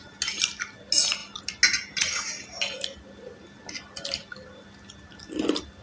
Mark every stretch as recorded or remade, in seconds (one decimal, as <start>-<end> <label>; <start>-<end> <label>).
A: 0.0-5.8 recorded